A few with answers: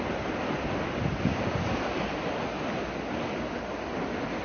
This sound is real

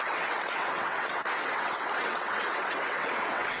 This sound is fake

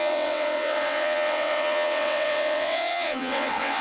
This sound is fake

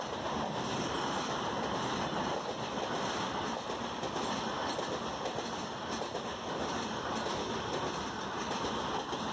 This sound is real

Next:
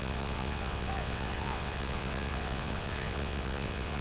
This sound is fake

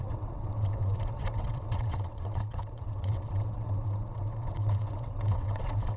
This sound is fake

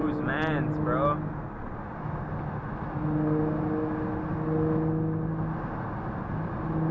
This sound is real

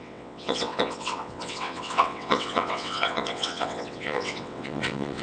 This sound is fake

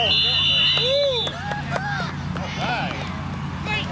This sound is real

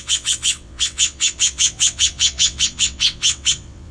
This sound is fake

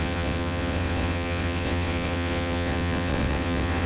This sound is fake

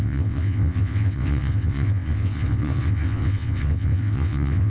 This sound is fake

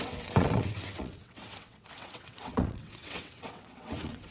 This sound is fake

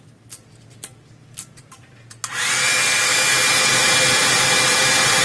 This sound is real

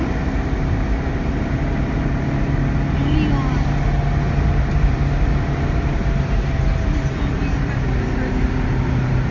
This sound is real